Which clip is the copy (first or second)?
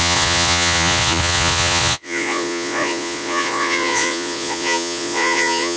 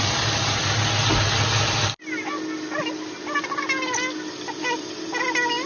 first